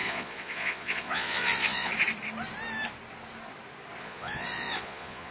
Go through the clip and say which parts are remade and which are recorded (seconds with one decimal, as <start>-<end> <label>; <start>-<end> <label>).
0.0-1.9 remade; 1.9-4.0 recorded; 4.0-5.3 remade

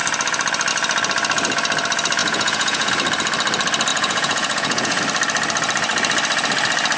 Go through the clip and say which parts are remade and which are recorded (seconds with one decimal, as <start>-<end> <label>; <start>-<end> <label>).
0.0-2.2 recorded; 2.2-2.9 remade; 2.9-3.9 recorded; 3.9-5.0 remade; 5.0-7.0 recorded

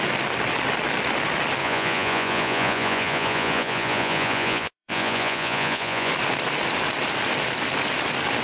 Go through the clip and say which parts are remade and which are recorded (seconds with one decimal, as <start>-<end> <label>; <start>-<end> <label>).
0.0-1.6 recorded; 1.6-6.1 remade; 6.1-8.4 recorded

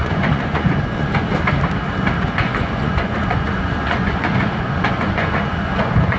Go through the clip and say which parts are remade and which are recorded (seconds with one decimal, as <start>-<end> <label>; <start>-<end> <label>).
0.0-1.3 remade; 1.3-2.2 recorded; 2.2-6.2 remade

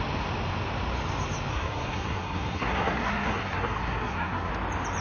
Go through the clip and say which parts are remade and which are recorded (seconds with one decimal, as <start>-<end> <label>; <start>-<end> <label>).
0.0-1.5 recorded; 1.5-4.5 remade; 4.5-5.0 recorded

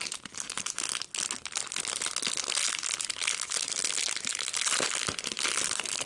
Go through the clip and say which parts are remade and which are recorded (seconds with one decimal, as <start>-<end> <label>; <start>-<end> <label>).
0.0-6.1 recorded

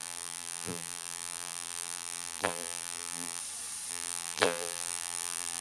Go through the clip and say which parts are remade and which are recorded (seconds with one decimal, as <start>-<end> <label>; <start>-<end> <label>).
0.0-3.4 remade; 3.4-3.9 recorded; 3.9-5.6 remade